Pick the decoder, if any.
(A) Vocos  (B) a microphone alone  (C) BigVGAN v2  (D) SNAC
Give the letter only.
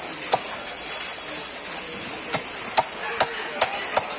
B